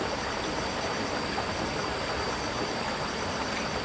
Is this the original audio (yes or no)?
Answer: yes